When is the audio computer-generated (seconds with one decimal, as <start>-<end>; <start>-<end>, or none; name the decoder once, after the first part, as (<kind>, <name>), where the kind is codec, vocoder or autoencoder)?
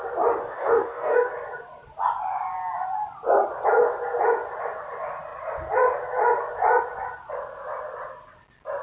0.4-1.3 (codec, DAC)